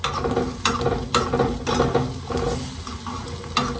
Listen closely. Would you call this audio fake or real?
real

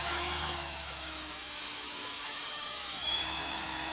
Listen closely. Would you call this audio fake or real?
fake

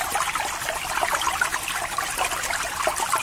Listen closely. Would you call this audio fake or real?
real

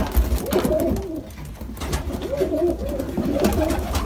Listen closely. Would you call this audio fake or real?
real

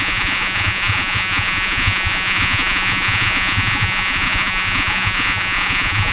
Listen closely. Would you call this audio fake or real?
fake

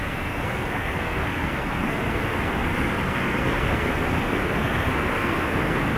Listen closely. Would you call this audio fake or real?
fake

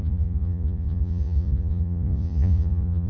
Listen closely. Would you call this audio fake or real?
fake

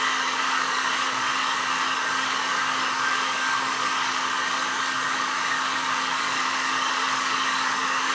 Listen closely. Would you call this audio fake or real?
fake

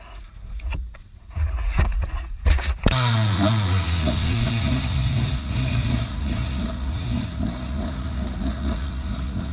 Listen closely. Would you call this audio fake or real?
fake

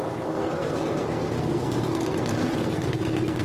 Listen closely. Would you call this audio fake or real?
fake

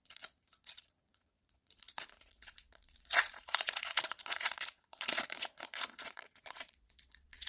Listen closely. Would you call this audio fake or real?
fake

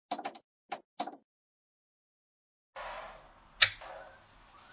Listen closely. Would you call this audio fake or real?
real